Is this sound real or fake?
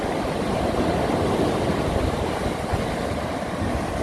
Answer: real